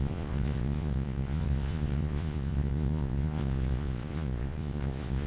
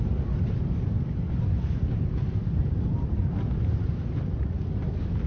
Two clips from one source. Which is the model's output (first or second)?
first